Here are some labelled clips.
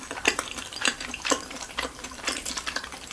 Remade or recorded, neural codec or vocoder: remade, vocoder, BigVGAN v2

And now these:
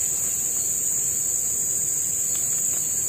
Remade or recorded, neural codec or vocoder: recorded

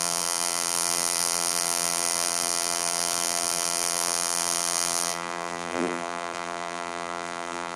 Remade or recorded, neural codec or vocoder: remade, vocoder, BigVGAN v2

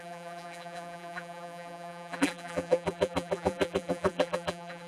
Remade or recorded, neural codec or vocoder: remade, vocoder, BigVGAN v2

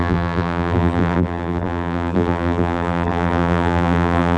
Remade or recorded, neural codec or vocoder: remade, vocoder, BigVGAN v2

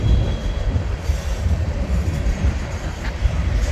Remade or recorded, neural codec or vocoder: remade, vocoder, BigVGAN v2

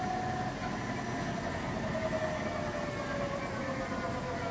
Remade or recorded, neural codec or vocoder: recorded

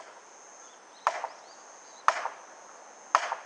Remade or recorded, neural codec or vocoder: recorded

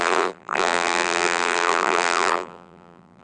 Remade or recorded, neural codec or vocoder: remade, vocoder, BigVGAN v2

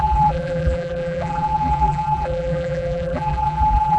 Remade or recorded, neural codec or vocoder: remade, vocoder, BigVGAN v2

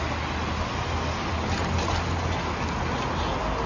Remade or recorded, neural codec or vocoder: recorded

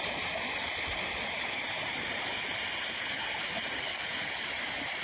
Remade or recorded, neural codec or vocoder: remade, vocoder, BigVGAN v2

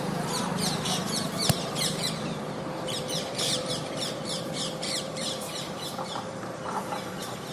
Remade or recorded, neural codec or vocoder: remade, vocoder, BigVGAN v2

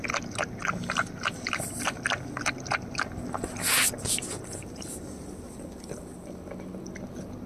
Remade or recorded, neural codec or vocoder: recorded